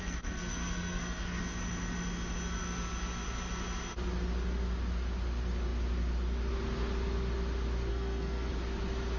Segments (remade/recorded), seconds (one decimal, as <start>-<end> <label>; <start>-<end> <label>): 0.0-1.4 remade; 1.4-7.9 recorded; 7.9-8.5 remade; 8.5-9.2 recorded